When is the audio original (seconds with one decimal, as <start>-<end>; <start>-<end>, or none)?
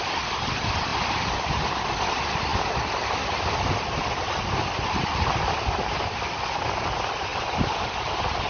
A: 0.0-8.5